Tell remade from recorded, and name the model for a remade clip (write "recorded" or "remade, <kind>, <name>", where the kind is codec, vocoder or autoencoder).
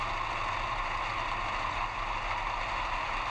recorded